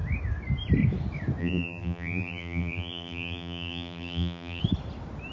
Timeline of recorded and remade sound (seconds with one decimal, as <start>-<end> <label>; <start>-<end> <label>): 0.0-1.4 recorded; 1.4-4.6 remade; 4.6-5.3 recorded